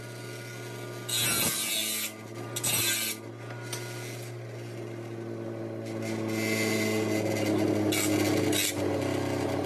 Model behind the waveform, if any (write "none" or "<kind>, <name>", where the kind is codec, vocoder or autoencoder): none